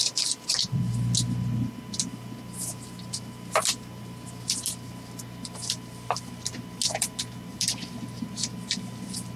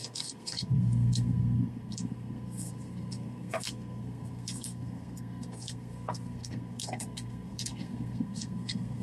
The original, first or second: first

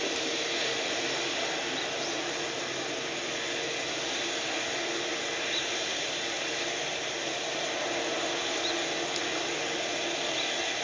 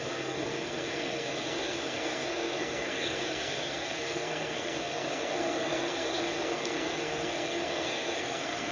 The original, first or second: first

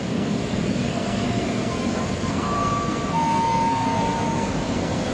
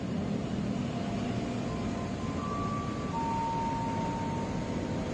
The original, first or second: second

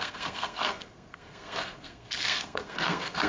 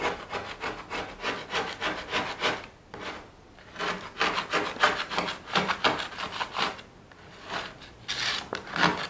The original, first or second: second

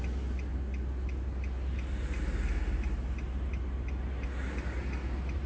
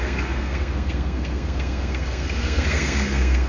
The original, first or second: first